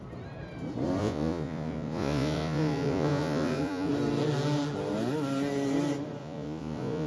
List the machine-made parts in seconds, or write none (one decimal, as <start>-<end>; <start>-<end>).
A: 1.0-3.9; 6.2-7.1